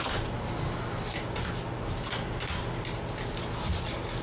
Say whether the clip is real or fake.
real